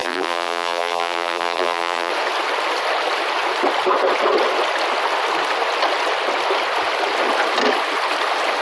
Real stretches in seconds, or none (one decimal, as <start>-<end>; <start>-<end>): 2.1-8.6